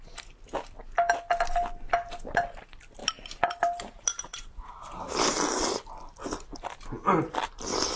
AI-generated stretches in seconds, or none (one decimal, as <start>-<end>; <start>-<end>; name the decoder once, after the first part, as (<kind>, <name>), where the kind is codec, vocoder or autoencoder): 3.0-5.3 (vocoder, BigVGAN v2)